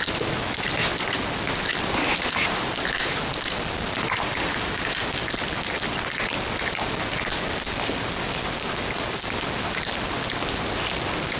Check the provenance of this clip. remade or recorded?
recorded